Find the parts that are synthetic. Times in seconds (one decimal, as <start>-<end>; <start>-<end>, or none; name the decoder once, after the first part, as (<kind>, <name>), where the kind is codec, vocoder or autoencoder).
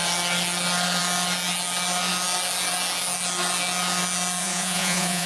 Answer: 4.4-5.3 (vocoder, Vocos)